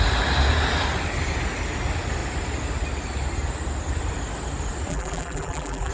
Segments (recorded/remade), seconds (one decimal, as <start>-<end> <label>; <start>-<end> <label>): 0.0-4.9 recorded; 4.9-5.9 remade